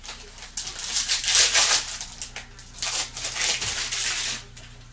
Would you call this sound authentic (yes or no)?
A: yes